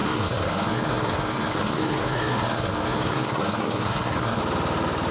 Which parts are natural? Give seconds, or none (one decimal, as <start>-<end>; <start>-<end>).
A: 4.4-5.1